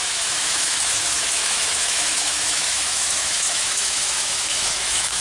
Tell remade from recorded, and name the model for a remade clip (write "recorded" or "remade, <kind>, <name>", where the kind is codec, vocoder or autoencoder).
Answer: remade, autoencoder, DAC-VAE